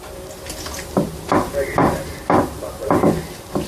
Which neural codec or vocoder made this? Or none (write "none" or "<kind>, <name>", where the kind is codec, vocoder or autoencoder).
none